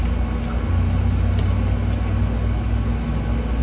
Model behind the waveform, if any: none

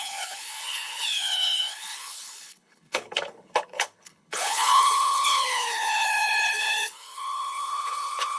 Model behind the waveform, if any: codec, HILCodec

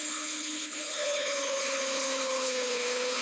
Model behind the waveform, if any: codec, HILCodec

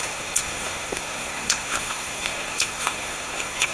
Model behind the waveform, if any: codec, SNAC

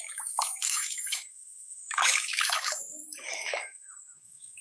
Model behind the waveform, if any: autoencoder, DAC-VAE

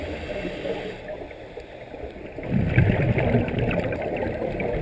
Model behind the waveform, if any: none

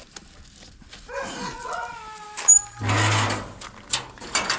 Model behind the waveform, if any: none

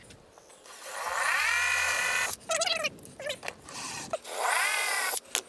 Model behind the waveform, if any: none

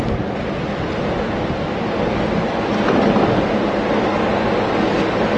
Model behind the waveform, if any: none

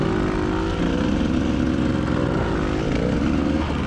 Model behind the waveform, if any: none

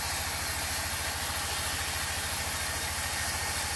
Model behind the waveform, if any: none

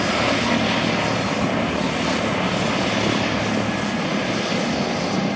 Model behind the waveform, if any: none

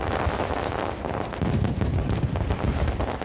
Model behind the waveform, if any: none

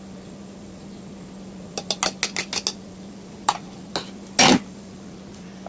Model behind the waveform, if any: none